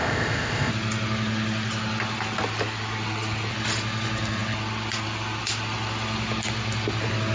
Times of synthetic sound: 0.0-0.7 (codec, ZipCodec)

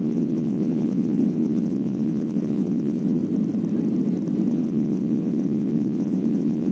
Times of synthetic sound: 0.0-3.2 (vocoder, WaveNeXt); 4.5-6.7